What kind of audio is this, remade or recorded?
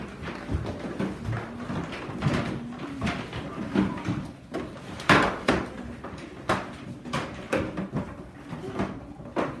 recorded